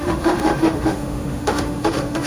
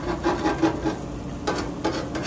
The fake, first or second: first